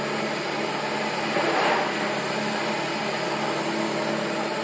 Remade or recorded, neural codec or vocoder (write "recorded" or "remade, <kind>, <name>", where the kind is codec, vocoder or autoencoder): recorded